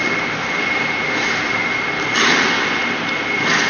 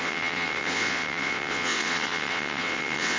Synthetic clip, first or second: second